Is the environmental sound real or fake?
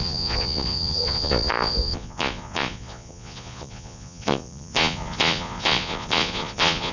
fake